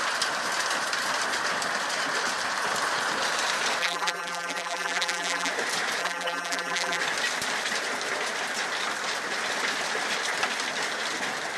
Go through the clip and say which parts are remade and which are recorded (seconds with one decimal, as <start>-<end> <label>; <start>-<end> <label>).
0.0-3.8 recorded; 3.8-5.5 remade; 5.5-6.0 recorded; 6.0-7.0 remade; 7.0-11.6 recorded